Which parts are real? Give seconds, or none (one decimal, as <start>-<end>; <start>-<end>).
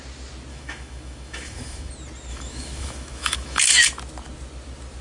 0.0-0.5; 1.9-2.3; 3.6-5.0